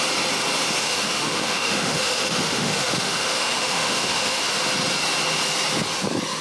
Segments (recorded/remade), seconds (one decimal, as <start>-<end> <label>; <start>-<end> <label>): 0.0-0.8 recorded; 0.8-4.6 remade; 4.6-6.4 recorded